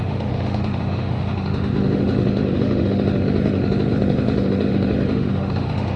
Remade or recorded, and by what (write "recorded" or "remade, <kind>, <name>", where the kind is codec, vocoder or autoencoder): remade, autoencoder, DAC-VAE